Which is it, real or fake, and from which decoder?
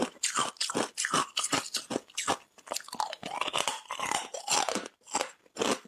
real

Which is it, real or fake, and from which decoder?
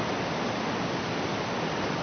real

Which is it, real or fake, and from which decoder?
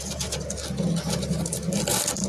real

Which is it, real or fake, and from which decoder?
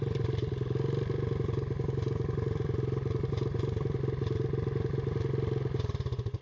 real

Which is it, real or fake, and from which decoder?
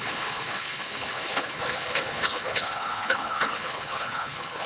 fake, codec, HILCodec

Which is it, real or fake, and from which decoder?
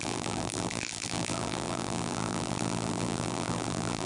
fake, vocoder, BigVGAN v2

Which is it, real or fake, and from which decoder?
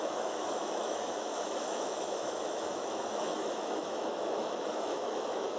fake, autoencoder, DAC-VAE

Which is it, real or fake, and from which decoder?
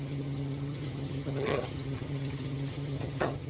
fake, vocoder, HiFi-GAN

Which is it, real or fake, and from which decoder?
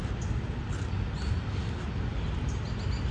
real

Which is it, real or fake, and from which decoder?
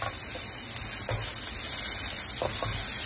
real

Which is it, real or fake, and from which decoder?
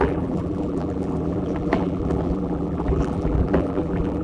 fake, vocoder, BigVGAN v2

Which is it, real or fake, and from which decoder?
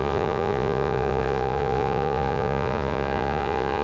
fake, vocoder, Vocos